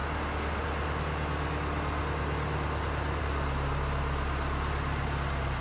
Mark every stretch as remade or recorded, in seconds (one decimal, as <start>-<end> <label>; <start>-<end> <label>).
0.0-5.6 recorded

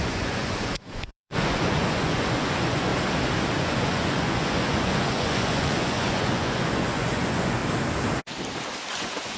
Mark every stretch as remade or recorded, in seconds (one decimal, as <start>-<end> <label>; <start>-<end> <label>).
0.0-2.9 remade; 2.9-3.6 recorded; 3.6-7.6 remade; 7.6-8.9 recorded; 8.9-9.4 remade